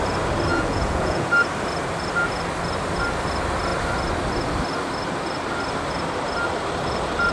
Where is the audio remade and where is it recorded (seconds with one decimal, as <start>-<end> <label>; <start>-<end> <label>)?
0.0-0.5 recorded; 0.5-1.3 remade; 1.3-7.3 recorded